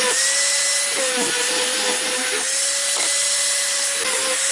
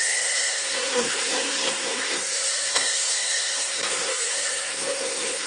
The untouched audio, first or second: first